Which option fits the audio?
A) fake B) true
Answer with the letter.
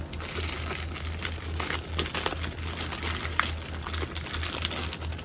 B